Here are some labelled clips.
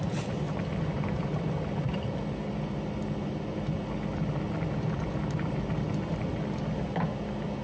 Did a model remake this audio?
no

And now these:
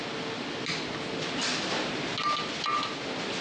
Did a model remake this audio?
no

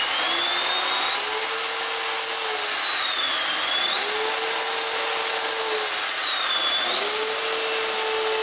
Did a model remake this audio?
no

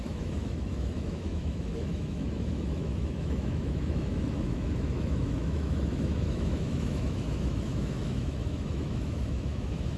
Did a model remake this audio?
yes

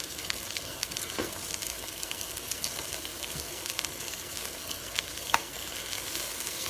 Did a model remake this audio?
yes